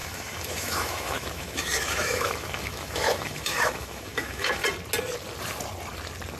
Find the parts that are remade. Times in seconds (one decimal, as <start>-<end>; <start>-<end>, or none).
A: 0.0-4.6